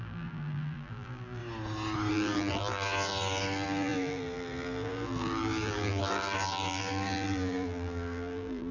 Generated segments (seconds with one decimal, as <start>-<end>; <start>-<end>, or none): 0.0-1.4; 2.1-8.7